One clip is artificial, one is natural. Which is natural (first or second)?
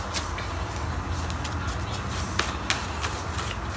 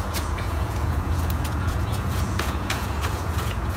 first